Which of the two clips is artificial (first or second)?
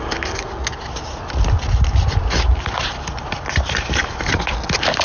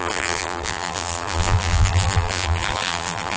second